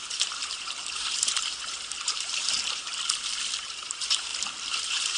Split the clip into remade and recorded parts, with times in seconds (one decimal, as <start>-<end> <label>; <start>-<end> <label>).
0.0-2.9 remade; 2.9-3.6 recorded; 3.6-4.3 remade; 4.3-4.8 recorded; 4.8-5.2 remade

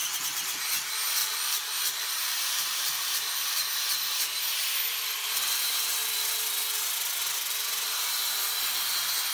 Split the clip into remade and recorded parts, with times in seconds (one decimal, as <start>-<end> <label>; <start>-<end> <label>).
0.0-0.6 remade; 0.6-1.2 recorded; 1.2-3.7 remade; 3.7-9.3 recorded

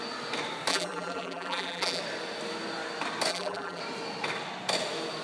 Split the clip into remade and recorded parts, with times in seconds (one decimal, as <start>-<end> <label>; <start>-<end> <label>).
0.0-0.7 recorded; 0.7-2.0 remade; 2.0-3.3 recorded; 3.3-3.8 remade; 3.8-5.2 recorded

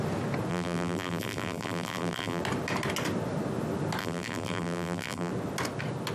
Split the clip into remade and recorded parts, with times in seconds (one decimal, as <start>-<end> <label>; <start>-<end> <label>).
0.0-0.5 recorded; 0.5-2.4 remade; 2.4-4.0 recorded; 4.0-5.3 remade; 5.3-6.1 recorded

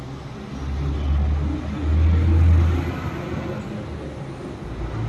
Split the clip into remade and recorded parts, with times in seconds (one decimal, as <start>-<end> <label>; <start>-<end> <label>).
0.0-5.1 recorded

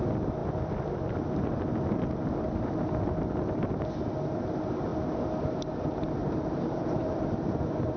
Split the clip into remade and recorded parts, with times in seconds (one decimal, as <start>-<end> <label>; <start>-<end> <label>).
0.0-6.2 recorded; 6.2-8.0 remade